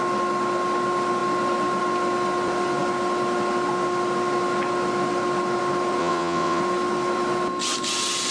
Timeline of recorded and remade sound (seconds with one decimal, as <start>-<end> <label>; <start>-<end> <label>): 0.0-6.0 recorded; 6.0-6.6 remade; 6.6-8.3 recorded